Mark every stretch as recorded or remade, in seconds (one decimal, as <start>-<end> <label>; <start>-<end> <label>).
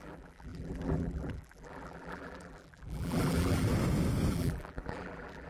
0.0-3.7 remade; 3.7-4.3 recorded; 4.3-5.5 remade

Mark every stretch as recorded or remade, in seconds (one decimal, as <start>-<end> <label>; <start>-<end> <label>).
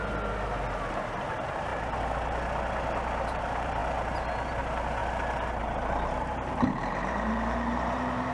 0.0-0.9 recorded; 0.9-1.7 remade; 1.7-3.3 recorded; 3.3-5.0 remade; 5.0-6.2 recorded; 6.2-8.3 remade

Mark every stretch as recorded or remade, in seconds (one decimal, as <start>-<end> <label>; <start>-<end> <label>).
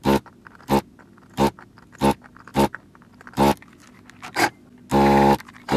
0.0-5.8 recorded